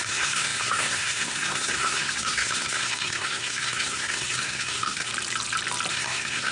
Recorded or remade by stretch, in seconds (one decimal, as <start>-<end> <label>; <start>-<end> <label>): 0.0-5.1 remade; 5.1-5.9 recorded; 5.9-6.5 remade